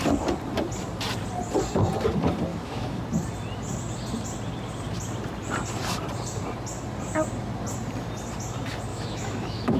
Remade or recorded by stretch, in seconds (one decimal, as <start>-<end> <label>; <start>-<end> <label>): 0.0-2.5 recorded; 2.5-3.0 remade; 3.0-8.9 recorded; 8.9-9.8 remade